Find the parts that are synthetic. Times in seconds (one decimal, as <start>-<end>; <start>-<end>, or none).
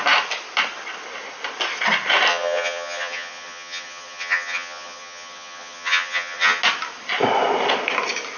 2.3-6.6